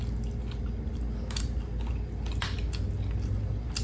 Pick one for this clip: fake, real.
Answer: real